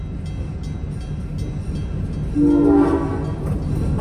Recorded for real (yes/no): yes